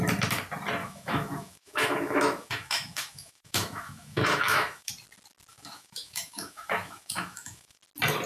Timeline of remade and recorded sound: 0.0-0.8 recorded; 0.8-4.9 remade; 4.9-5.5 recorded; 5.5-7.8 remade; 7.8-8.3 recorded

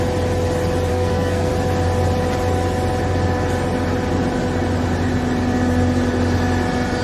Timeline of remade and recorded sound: 0.0-0.9 recorded; 0.9-1.5 remade; 1.5-7.0 recorded

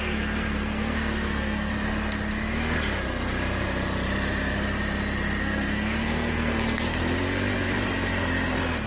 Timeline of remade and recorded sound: 0.0-1.7 remade; 1.7-5.4 recorded; 5.4-7.0 remade; 7.0-8.9 recorded

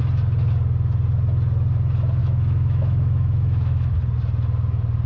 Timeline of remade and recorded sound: 0.0-2.2 recorded; 2.2-3.9 remade; 3.9-5.1 recorded

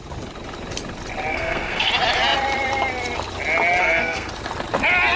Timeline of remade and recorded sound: 0.0-1.3 recorded; 1.3-1.9 remade; 1.9-3.8 recorded; 3.8-4.3 remade; 4.3-5.2 recorded

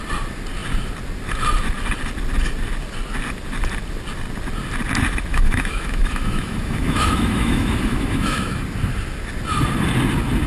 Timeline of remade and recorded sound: 0.0-5.3 recorded; 5.3-8.6 remade; 8.6-10.5 recorded

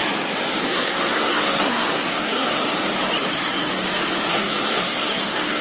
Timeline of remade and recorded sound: 0.0-0.6 recorded; 0.6-2.6 remade; 2.6-3.3 recorded; 3.3-3.7 remade; 3.7-4.3 recorded; 4.3-5.6 remade

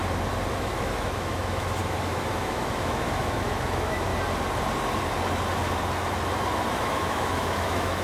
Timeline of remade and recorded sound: 0.0-0.5 recorded; 0.5-4.1 remade; 4.1-6.7 recorded; 6.7-8.0 remade